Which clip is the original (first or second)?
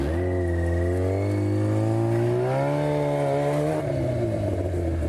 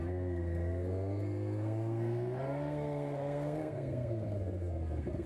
first